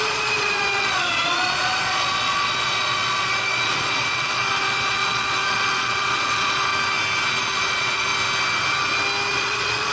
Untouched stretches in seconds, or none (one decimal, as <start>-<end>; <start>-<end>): 6.7-7.3; 8.1-9.3